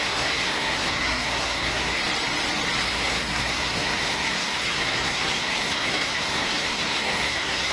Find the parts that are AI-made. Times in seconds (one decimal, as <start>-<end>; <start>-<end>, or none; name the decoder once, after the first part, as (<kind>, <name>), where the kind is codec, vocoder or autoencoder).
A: 0.0-2.0 (codec, SNAC); 2.8-7.7